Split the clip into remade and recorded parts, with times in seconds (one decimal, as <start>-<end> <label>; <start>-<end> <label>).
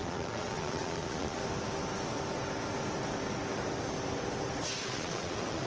0.0-1.4 remade; 1.4-4.8 recorded; 4.8-5.7 remade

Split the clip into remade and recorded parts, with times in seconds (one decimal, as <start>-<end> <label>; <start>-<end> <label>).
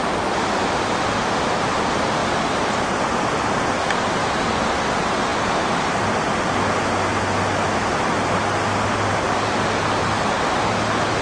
0.0-2.2 recorded; 2.2-2.9 remade; 2.9-11.2 recorded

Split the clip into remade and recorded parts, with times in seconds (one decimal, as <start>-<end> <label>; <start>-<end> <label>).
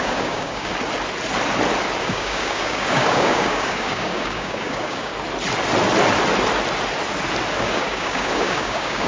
0.0-0.7 remade; 0.7-2.0 recorded; 2.0-5.1 remade; 5.1-7.6 recorded; 7.6-9.1 remade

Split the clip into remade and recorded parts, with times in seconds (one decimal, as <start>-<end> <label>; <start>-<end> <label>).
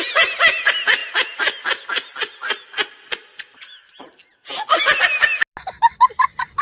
0.0-6.6 recorded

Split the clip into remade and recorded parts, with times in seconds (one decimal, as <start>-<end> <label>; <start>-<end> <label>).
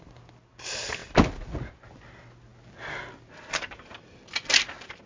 0.0-5.1 recorded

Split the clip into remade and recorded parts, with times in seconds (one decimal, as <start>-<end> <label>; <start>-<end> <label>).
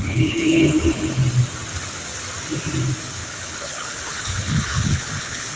0.0-1.2 remade; 1.2-3.0 recorded; 3.0-5.6 remade